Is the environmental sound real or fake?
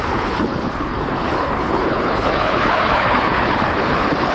fake